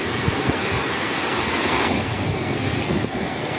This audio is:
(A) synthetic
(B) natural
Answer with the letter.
A